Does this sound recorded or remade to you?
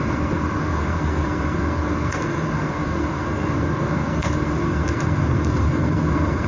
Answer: remade